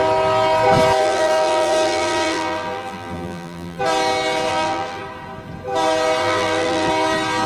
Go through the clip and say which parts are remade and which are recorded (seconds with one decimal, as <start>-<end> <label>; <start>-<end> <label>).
0.0-1.0 recorded; 1.0-3.8 remade; 3.8-4.5 recorded; 4.5-5.0 remade; 5.0-6.2 recorded; 6.2-6.9 remade; 6.9-7.5 recorded